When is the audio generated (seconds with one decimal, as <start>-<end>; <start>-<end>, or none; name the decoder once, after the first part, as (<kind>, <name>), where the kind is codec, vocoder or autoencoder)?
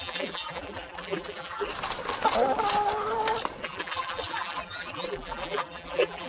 0.0-1.7 (vocoder, BigVGAN v2); 3.6-6.3